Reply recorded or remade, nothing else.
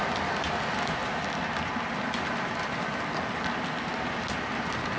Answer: recorded